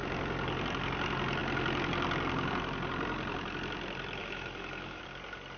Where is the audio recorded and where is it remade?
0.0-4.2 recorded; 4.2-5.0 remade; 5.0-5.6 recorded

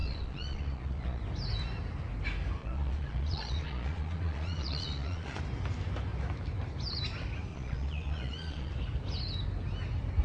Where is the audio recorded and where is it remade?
0.0-1.2 remade; 1.2-2.6 recorded; 2.6-5.4 remade; 5.4-7.5 recorded; 7.5-8.7 remade; 8.7-10.2 recorded

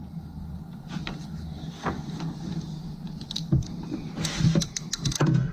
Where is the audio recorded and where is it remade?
0.0-5.5 recorded

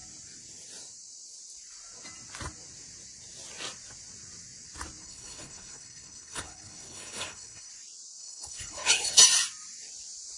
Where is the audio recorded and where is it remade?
0.0-5.0 recorded; 5.0-7.7 remade; 7.7-8.2 recorded; 8.2-9.2 remade; 9.2-10.4 recorded

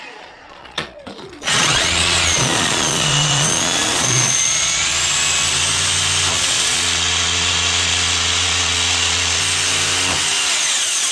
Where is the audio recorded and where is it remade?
0.0-4.9 remade; 4.9-6.3 recorded; 6.3-9.4 remade; 9.4-10.5 recorded; 10.5-11.1 remade

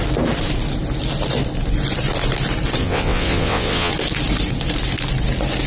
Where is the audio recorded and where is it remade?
0.0-2.8 recorded; 2.8-3.9 remade; 3.9-5.7 recorded

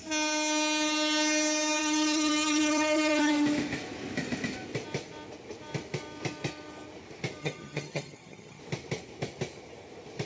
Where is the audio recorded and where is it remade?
0.0-1.8 recorded; 1.8-3.3 remade; 3.3-7.4 recorded; 7.4-8.6 remade; 8.6-10.3 recorded